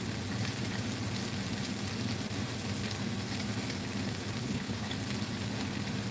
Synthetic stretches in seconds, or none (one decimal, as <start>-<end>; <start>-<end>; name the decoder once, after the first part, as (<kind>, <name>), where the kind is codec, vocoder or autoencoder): 4.4-4.9 (codec, HILCodec)